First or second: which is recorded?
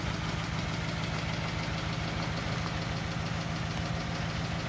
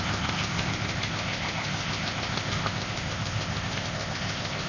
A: first